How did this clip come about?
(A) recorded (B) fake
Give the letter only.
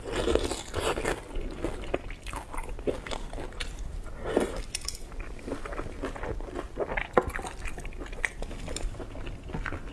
A